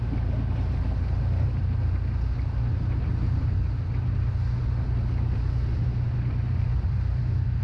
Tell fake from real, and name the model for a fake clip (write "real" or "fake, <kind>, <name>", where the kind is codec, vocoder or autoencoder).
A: real